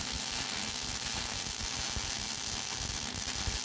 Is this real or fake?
real